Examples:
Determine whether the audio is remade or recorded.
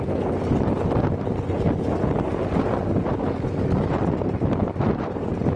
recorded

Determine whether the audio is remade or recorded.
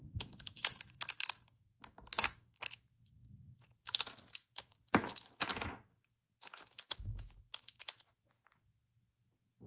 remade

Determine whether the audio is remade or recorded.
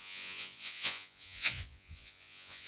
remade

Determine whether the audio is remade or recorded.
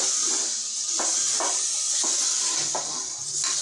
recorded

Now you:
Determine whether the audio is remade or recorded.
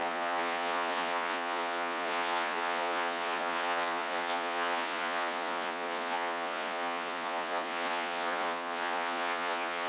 remade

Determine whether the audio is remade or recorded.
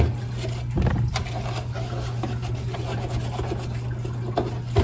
recorded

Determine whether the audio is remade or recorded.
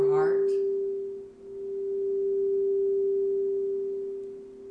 recorded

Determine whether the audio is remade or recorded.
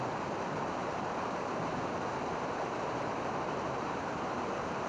remade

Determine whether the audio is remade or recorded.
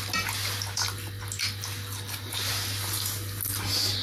recorded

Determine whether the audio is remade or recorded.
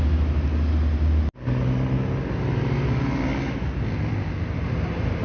recorded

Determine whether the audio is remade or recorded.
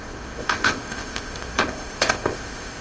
remade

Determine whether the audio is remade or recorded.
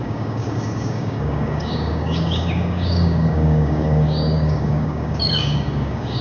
remade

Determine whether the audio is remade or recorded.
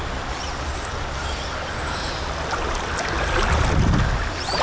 recorded